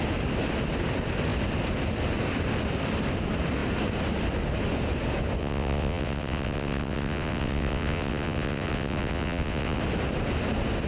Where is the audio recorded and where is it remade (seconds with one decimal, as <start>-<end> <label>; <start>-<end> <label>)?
0.0-5.4 recorded; 5.4-9.8 remade; 9.8-10.9 recorded